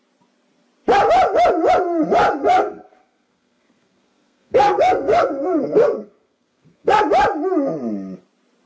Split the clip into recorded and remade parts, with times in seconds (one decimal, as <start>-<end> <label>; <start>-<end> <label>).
0.0-2.4 recorded; 2.4-7.0 remade; 7.0-8.7 recorded